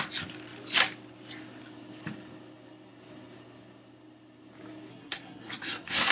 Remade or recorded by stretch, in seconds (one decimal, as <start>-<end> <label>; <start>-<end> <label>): 0.0-4.9 recorded; 4.9-6.1 remade